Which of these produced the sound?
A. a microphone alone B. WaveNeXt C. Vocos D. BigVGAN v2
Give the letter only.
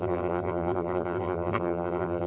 D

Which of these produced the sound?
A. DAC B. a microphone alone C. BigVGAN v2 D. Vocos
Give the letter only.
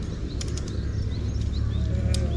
B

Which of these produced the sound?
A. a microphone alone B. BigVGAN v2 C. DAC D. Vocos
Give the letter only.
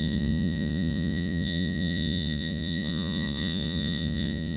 D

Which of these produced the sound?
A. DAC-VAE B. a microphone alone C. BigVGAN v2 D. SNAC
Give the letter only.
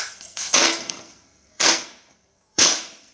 D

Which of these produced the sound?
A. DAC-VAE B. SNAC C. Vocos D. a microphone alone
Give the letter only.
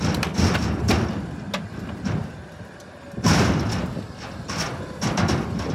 D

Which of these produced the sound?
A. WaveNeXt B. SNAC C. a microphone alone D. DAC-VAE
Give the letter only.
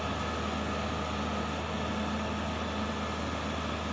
C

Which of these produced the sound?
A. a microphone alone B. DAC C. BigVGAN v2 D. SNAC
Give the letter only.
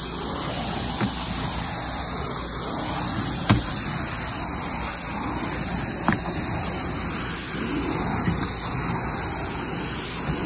A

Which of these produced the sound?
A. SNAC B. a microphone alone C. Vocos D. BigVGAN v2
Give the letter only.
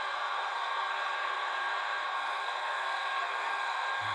A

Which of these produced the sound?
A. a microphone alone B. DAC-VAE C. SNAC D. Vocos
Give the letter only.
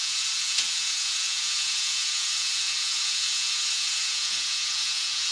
D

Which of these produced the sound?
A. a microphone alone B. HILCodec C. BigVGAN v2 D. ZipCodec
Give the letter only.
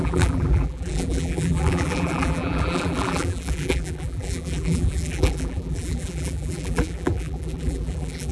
C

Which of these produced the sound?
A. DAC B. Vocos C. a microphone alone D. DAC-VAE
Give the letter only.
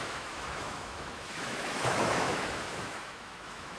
D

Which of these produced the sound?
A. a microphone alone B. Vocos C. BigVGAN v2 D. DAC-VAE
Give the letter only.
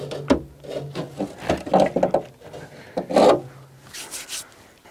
A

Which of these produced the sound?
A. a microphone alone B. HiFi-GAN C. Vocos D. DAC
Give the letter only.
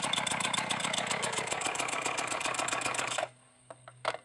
D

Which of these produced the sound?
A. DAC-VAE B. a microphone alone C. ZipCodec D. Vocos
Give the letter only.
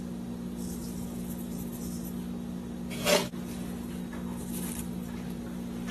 B